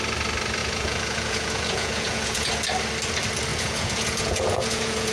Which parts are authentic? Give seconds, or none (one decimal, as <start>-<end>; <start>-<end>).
0.0-0.6; 2.5-3.5